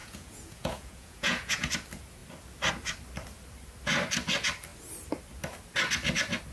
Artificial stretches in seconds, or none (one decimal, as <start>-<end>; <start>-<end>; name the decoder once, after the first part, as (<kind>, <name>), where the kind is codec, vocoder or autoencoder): 0.0-1.7 (vocoder, Vocos)